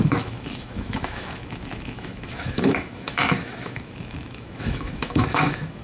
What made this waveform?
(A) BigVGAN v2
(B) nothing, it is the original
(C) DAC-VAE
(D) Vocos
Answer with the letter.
C